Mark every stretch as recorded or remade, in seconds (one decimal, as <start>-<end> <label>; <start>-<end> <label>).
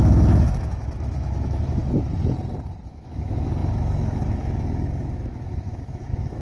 0.0-1.8 remade; 1.8-2.9 recorded; 2.9-6.4 remade